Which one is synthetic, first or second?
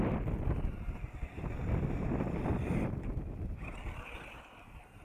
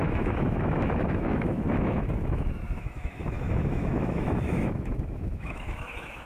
second